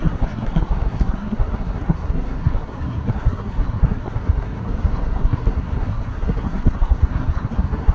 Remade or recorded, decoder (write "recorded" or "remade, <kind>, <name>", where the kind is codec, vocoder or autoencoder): remade, codec, SNAC